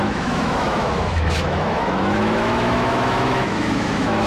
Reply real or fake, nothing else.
fake